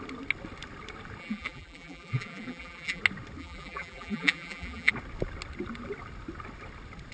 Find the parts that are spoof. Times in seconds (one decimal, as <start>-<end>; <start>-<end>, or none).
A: 1.2-3.0; 3.4-4.9